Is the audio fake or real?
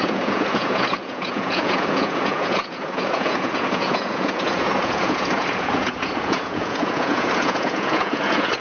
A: fake